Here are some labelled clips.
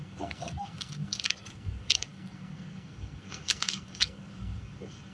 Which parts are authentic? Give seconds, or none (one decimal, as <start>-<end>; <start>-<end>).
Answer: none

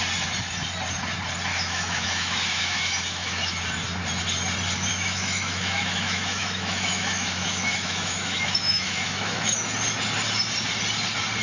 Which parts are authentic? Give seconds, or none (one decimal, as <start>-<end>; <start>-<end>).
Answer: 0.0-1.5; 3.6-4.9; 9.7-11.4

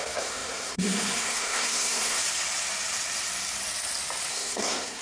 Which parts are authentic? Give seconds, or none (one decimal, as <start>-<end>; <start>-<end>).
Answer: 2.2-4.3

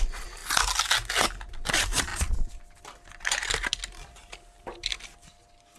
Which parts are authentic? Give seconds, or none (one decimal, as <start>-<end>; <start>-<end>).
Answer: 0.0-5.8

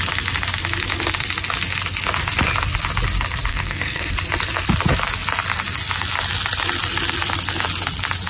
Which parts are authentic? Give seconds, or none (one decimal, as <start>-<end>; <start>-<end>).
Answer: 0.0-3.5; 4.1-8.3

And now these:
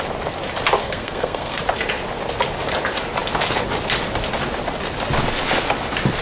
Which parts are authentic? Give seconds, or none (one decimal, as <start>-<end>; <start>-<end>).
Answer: 0.0-0.8; 1.6-6.2